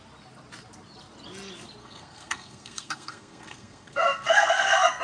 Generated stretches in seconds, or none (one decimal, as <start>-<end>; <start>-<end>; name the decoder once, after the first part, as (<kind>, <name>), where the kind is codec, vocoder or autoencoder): 1.8-5.0 (codec, SNAC)